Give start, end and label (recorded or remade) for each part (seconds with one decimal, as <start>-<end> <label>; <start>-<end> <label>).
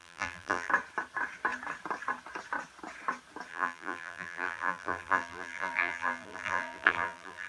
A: 0.0-0.7 remade; 0.7-3.5 recorded; 3.5-7.5 remade